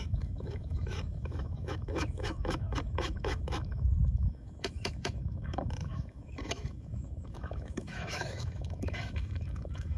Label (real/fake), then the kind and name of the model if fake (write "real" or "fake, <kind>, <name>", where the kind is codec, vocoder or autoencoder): fake, autoencoder, DAC-VAE